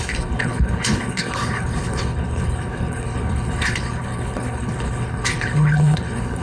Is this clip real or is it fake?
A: fake